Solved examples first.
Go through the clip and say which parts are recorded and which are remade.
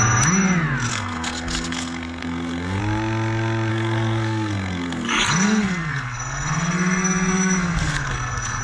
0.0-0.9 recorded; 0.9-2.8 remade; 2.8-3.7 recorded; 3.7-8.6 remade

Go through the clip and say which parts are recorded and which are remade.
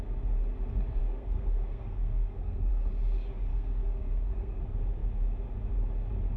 0.0-1.0 recorded; 1.0-2.7 remade; 2.7-3.5 recorded; 3.5-4.6 remade; 4.6-6.4 recorded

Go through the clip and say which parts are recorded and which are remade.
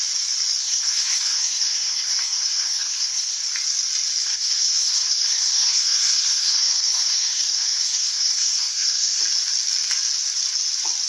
0.0-0.6 recorded; 0.6-3.4 remade; 3.4-4.2 recorded; 4.2-9.2 remade; 9.2-11.1 recorded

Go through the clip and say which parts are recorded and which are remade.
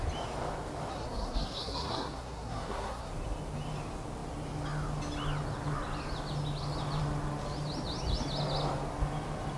0.0-0.9 recorded; 0.9-3.1 remade; 3.1-9.6 recorded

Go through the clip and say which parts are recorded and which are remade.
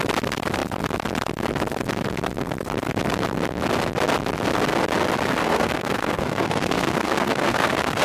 0.0-5.4 recorded; 5.4-8.0 remade